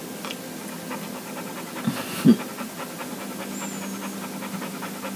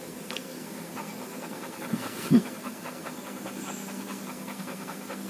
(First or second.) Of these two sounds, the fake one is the second